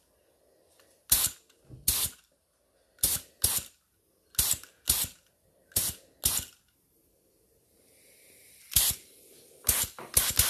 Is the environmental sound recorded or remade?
recorded